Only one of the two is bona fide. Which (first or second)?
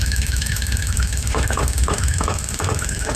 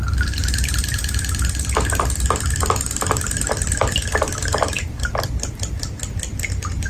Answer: second